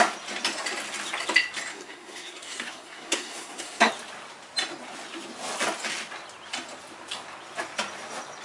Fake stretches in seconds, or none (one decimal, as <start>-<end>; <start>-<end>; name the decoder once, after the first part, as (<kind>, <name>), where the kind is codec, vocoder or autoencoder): 1.7-3.9 (codec, SNAC)